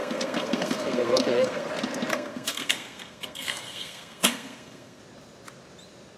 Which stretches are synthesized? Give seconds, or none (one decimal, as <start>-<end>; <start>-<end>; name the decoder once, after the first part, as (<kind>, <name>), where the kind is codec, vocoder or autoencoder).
0.0-1.7 (codec, SNAC); 2.1-5.0